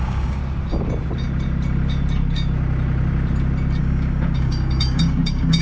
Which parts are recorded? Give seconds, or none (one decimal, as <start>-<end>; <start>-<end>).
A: 0.4-3.8